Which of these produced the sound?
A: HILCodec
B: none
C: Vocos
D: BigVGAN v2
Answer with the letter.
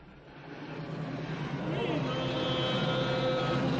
B